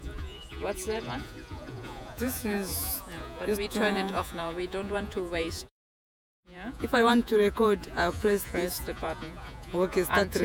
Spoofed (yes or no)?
yes